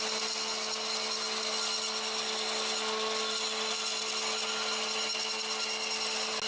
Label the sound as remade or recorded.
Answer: recorded